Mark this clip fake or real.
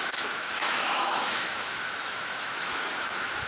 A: fake